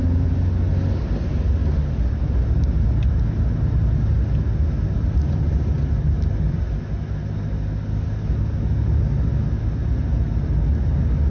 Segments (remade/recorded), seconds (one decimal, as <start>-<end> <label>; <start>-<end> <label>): 0.0-11.3 recorded